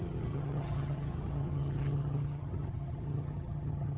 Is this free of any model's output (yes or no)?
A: no